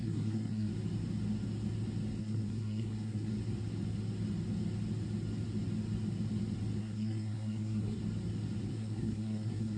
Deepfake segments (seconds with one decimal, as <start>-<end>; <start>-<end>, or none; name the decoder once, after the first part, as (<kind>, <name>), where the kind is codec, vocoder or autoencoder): 0.0-0.7 (codec, SNAC); 2.2-3.3; 6.8-8.0; 8.7-9.8

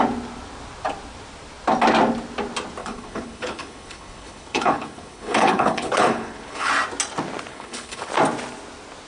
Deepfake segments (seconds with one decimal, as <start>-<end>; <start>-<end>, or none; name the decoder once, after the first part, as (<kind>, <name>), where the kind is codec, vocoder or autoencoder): 2.8-6.7 (codec, HILCodec); 7.5-8.1

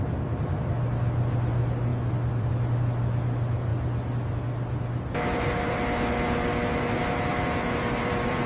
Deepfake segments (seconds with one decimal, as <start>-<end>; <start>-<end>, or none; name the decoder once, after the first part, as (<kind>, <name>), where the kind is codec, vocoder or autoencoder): 0.0-1.9 (vocoder, BigVGAN v2); 2.4-3.7; 8.0-8.5

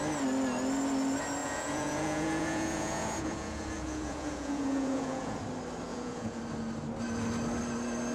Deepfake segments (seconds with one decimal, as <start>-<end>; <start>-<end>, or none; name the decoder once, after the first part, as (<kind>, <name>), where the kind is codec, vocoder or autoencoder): 1.4-5.4 (vocoder, Vocos); 5.9-6.4